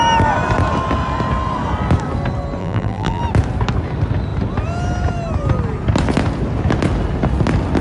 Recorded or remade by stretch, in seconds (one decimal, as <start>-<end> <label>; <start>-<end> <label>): 0.0-2.6 recorded; 2.6-3.2 remade; 3.2-7.8 recorded